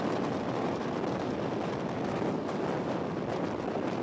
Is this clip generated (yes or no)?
no